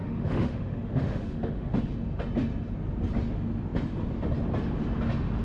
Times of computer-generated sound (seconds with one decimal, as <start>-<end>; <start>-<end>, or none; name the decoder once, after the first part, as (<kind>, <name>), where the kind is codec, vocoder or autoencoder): 0.0-1.8 (autoencoder, DAC-VAE)